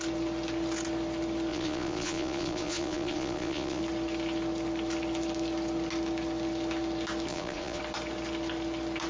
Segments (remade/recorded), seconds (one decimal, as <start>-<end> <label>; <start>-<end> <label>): 0.0-1.5 recorded; 1.5-3.8 remade; 3.8-7.3 recorded; 7.3-7.8 remade; 7.8-9.1 recorded